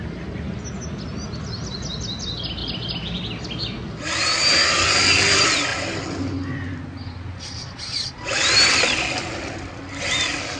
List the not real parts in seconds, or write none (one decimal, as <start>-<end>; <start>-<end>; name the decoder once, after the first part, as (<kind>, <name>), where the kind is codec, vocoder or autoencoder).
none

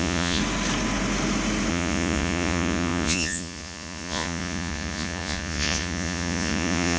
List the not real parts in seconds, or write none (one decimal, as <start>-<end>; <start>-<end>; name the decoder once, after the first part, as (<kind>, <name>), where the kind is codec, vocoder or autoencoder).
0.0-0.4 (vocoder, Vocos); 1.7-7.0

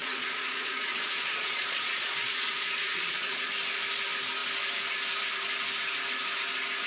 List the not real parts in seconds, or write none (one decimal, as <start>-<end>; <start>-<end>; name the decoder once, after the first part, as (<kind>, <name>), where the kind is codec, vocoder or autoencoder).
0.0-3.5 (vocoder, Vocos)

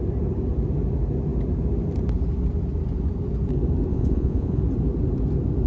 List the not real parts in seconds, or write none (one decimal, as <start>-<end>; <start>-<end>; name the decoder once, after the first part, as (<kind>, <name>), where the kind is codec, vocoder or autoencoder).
3.9-4.6 (vocoder, Vocos)

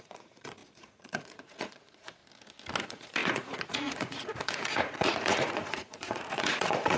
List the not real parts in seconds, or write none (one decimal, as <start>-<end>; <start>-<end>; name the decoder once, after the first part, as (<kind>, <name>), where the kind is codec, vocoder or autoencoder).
0.0-2.2 (vocoder, Vocos); 2.8-7.0